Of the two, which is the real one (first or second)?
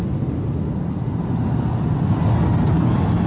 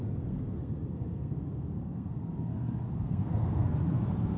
first